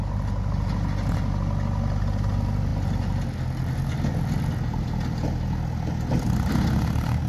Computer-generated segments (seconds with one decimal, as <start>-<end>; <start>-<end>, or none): none